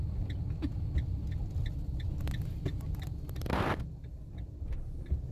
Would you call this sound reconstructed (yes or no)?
no